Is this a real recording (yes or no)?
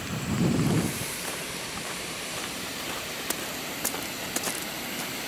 no